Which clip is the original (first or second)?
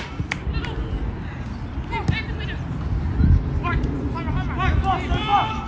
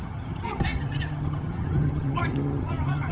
first